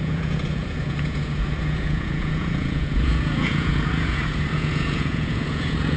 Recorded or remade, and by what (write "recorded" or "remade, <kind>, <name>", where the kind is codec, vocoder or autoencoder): remade, vocoder, Vocos